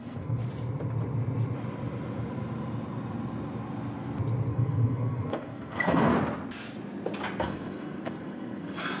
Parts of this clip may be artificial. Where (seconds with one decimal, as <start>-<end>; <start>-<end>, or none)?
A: 0.0-0.4; 4.5-6.1; 7.4-9.0